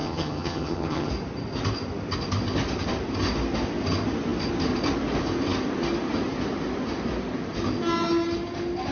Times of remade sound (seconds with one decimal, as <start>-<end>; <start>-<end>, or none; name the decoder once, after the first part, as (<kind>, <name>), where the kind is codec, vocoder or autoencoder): 0.0-1.1 (vocoder, HiFi-GAN)